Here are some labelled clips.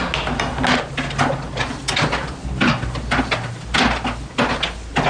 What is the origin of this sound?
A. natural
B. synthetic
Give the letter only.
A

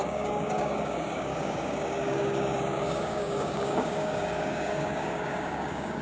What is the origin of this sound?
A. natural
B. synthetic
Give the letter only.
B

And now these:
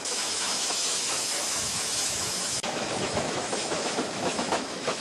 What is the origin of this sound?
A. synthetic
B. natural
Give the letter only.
A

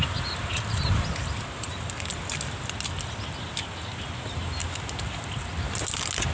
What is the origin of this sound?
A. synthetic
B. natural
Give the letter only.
B